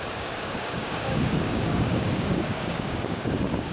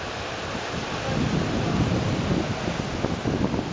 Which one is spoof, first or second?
first